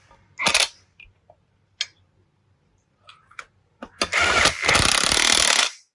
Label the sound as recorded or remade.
recorded